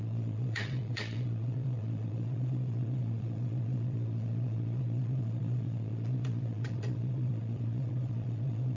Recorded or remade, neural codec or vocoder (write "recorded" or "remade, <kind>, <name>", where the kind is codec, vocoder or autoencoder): remade, vocoder, Vocos